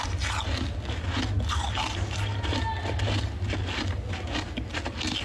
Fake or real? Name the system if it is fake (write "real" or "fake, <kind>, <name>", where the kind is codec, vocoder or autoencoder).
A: real